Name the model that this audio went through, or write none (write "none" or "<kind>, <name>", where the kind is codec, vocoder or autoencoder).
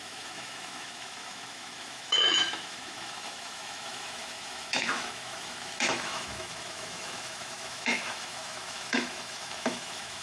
autoencoder, DAC-VAE